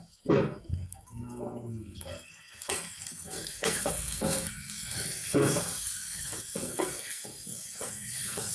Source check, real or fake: fake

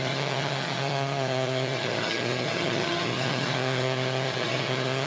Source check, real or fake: fake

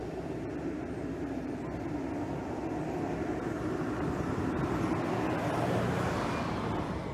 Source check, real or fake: real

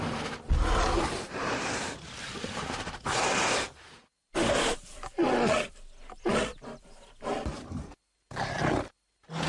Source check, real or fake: real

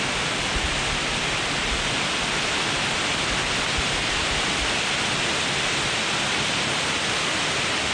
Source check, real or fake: real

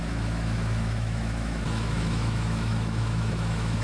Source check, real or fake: fake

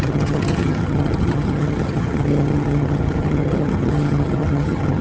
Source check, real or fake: fake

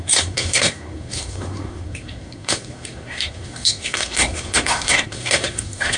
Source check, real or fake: fake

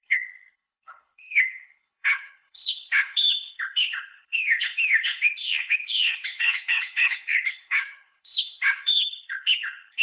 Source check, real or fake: fake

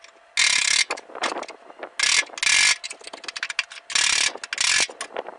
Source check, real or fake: real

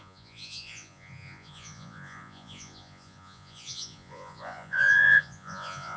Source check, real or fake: fake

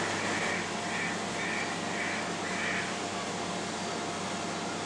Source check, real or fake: real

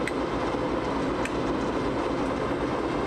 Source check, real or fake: real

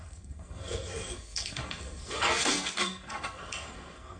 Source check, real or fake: fake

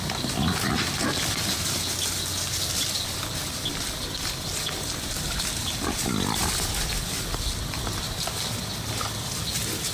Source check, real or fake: real